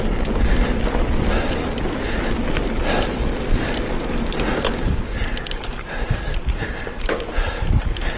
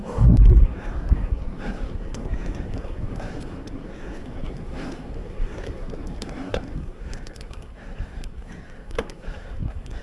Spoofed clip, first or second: second